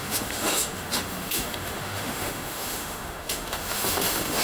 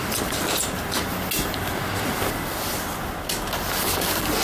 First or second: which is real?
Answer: second